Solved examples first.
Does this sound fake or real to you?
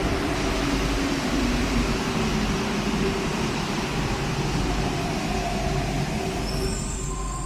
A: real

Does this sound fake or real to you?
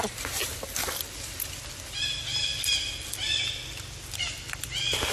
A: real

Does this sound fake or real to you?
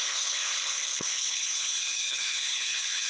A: fake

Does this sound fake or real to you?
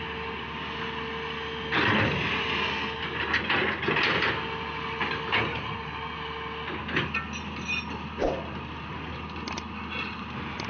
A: real